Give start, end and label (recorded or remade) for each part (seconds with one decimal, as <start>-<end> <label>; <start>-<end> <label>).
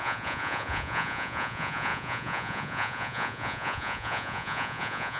0.0-5.2 remade